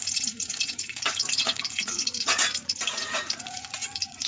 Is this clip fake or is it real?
fake